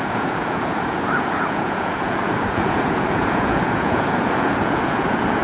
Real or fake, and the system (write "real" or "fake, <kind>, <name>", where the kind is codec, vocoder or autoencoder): fake, vocoder, Vocos